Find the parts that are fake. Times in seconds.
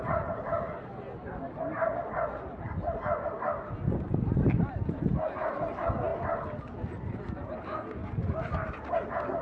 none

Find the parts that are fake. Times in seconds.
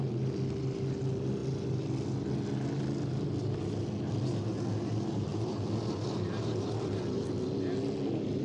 5.3-7.3 (vocoder, BigVGAN v2)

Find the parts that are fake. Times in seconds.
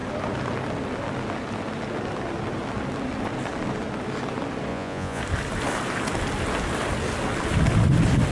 4.7-5.2 (vocoder, Vocos)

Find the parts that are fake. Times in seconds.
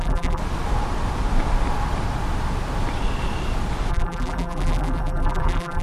0.0-0.4 (vocoder, BigVGAN v2); 3.9-5.8